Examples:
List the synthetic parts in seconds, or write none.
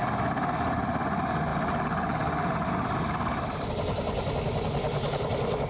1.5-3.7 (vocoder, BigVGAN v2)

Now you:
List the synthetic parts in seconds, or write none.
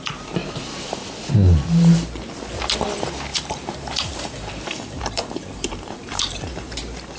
3.3-6.8 (vocoder, BigVGAN v2)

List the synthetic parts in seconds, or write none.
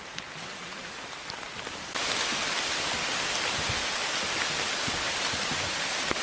0.0-0.7 (vocoder, BigVGAN v2); 4.4-6.2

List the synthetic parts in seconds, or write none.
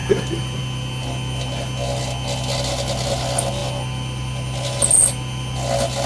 none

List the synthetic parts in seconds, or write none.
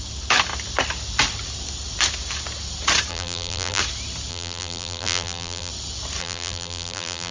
3.1-3.8 (vocoder, BigVGAN v2); 4.3-5.7; 6.2-7.3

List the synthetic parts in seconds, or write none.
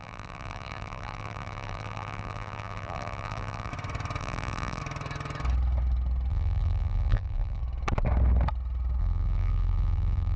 0.0-3.7 (vocoder, BigVGAN v2); 4.2-4.8; 6.3-7.6; 9.0-10.4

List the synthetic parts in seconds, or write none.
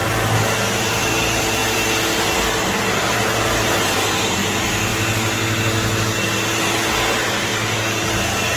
0.8-1.6 (vocoder, BigVGAN v2); 3.0-4.9; 6.6-7.5